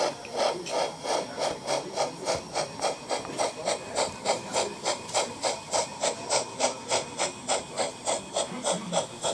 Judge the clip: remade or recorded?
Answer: recorded